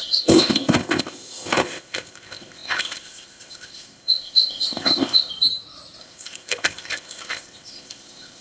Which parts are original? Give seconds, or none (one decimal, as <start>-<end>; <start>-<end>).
5.3-6.0